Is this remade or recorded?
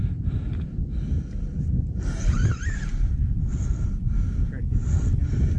recorded